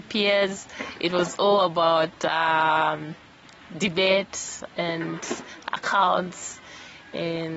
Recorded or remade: recorded